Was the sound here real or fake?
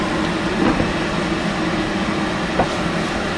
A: real